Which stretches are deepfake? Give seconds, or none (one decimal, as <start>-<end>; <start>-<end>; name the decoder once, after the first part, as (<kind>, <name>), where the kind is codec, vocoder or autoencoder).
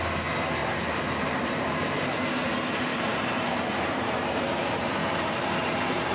0.6-1.3 (vocoder, BigVGAN v2); 2.9-3.6